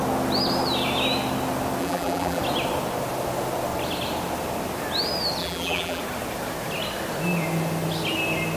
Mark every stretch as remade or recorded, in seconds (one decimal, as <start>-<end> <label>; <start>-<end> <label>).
0.0-1.8 recorded; 1.8-2.4 remade; 2.4-5.4 recorded; 5.4-6.0 remade; 6.0-8.6 recorded